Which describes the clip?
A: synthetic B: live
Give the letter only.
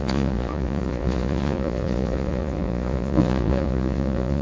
A